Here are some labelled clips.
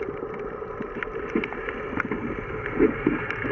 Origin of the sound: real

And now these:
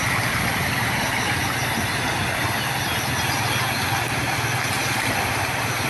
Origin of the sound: real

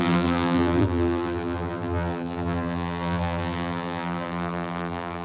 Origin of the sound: fake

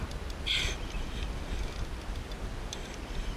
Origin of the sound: real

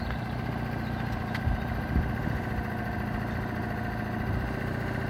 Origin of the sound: real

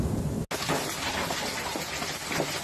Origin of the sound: real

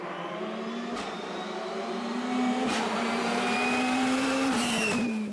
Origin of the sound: fake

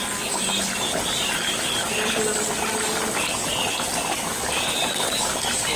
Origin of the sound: fake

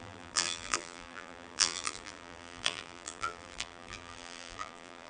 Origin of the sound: fake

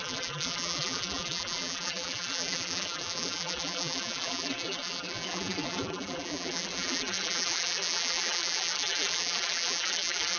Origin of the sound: fake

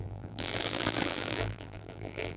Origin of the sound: fake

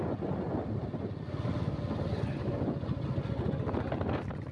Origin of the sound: real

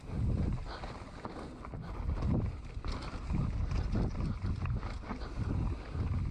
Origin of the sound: real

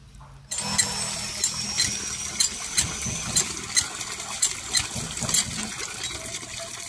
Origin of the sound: real